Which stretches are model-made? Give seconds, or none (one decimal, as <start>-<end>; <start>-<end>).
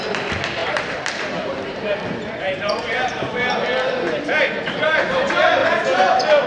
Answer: 0.0-3.7; 4.6-5.6